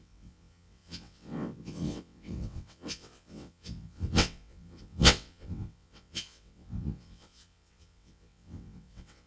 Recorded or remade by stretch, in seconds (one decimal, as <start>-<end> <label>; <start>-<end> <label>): 0.0-9.3 remade